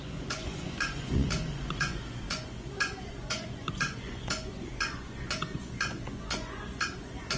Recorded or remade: remade